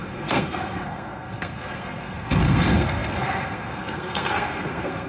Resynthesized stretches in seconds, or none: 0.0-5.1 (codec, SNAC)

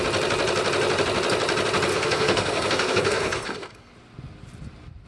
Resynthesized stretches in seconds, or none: 1.9-3.9 (codec, SNAC)

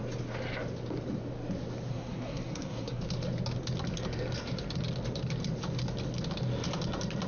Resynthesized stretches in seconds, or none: 1.9-3.0 (codec, SNAC)

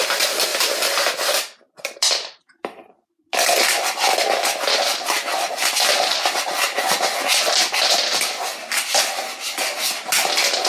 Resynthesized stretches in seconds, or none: none